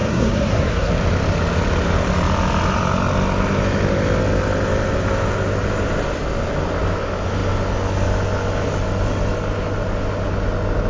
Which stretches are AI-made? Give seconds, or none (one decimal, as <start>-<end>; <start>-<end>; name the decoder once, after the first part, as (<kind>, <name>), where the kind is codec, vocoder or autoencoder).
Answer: 0.0-0.9 (codec, SNAC)